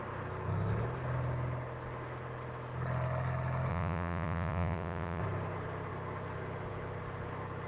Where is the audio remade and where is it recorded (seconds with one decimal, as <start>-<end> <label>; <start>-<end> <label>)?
0.0-3.7 recorded; 3.7-5.2 remade; 5.2-7.7 recorded